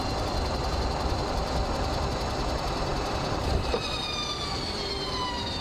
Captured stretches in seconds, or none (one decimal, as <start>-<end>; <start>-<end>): 0.0-2.9; 4.9-5.6

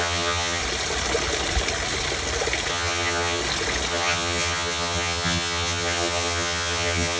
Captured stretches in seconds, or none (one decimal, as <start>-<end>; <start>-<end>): 0.6-2.7; 3.4-3.9

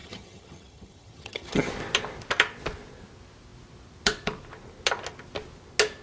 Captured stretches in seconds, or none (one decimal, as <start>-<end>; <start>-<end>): 1.7-6.0

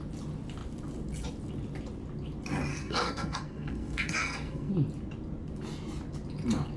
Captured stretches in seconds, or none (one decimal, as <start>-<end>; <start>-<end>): 0.0-2.7; 4.7-6.8

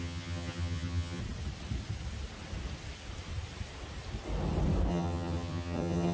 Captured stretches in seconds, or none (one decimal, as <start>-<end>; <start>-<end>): 1.2-4.9

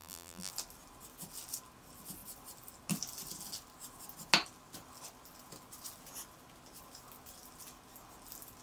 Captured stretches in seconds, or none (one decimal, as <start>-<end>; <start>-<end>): 0.5-8.6